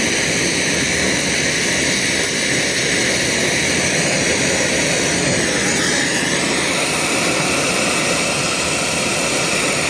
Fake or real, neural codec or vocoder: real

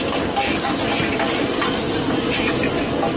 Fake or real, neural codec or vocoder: real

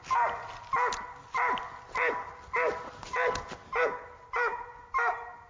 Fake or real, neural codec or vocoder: real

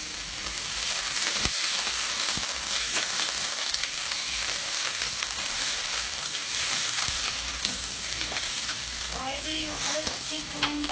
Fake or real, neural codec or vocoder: fake, codec, DAC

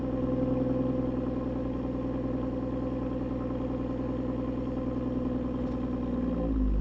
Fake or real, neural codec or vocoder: real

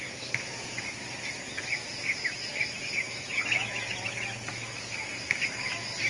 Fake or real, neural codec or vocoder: fake, autoencoder, DAC-VAE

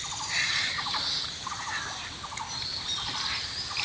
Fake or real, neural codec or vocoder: real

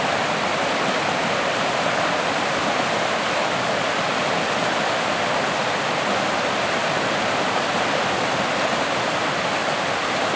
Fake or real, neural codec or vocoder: real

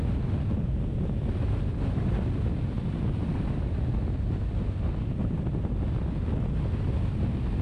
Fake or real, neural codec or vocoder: real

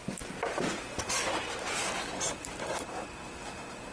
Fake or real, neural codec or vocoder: real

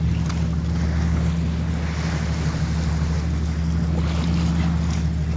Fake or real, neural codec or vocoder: real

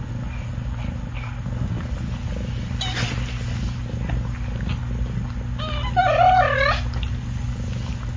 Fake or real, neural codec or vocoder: real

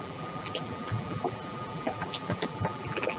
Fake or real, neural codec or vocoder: fake, vocoder, BigVGAN v2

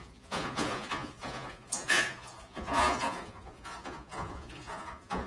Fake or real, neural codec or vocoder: fake, vocoder, Vocos